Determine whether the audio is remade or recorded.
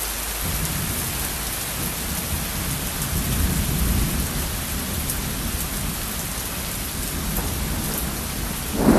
recorded